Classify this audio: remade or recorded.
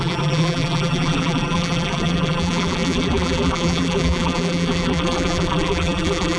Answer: remade